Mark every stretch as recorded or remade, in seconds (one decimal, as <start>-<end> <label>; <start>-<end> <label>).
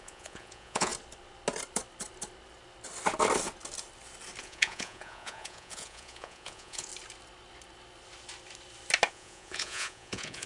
0.0-0.9 remade; 0.9-4.4 recorded; 4.4-6.9 remade; 6.9-9.1 recorded; 9.1-10.5 remade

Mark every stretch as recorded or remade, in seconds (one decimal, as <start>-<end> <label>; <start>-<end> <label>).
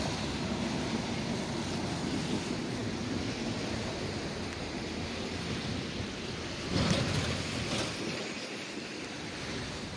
0.0-10.0 recorded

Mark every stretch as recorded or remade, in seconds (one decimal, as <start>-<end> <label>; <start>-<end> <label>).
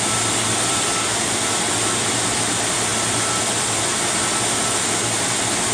0.0-5.7 recorded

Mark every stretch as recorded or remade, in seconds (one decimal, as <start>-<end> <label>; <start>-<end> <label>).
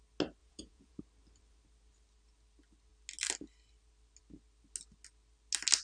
0.0-0.4 recorded; 0.4-1.0 remade; 1.0-5.8 recorded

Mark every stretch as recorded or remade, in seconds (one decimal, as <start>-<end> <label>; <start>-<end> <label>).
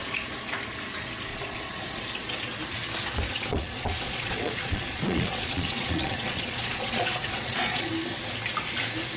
0.0-1.3 recorded; 1.3-2.0 remade; 2.0-3.5 recorded; 3.5-7.9 remade; 7.9-9.2 recorded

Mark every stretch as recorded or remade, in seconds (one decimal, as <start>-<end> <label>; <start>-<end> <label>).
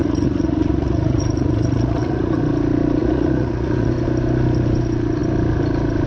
0.0-2.4 remade; 2.4-3.0 recorded; 3.0-3.9 remade; 3.9-6.1 recorded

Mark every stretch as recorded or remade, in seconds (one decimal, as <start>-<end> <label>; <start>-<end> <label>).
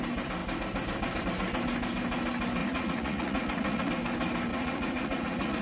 0.0-2.6 recorded; 2.6-3.9 remade; 3.9-4.5 recorded; 4.5-5.6 remade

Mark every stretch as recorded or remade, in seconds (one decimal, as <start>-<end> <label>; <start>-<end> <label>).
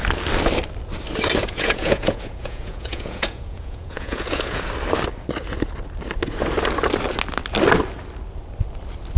0.0-1.4 recorded; 1.4-4.7 remade; 4.7-9.2 recorded